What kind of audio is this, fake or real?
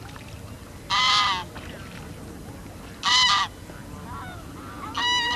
real